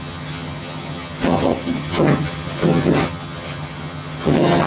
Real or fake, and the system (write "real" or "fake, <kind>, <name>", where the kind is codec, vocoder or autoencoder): fake, vocoder, HiFi-GAN